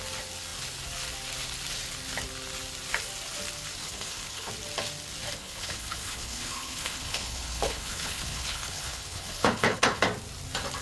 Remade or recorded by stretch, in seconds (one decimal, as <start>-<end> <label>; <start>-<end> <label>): 0.0-3.8 recorded; 3.8-4.5 remade; 4.5-5.4 recorded; 5.4-10.0 remade; 10.0-10.8 recorded